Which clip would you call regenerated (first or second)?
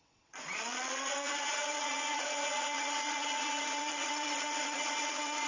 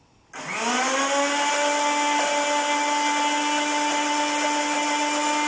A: first